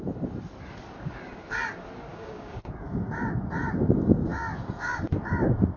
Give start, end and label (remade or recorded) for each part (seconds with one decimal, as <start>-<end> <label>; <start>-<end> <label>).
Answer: 0.0-2.1 recorded; 2.1-2.7 remade; 2.7-5.8 recorded